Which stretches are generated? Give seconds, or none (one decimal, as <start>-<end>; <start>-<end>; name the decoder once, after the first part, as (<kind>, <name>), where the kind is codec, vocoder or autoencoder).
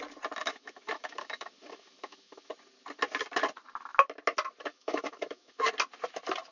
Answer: 0.4-2.5 (autoencoder, DAC-VAE); 4.7-5.7